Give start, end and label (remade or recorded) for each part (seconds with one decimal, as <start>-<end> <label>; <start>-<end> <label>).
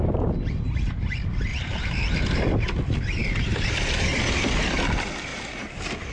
0.0-1.5 recorded; 1.5-2.3 remade; 2.3-3.2 recorded; 3.2-4.0 remade; 4.0-5.3 recorded; 5.3-6.1 remade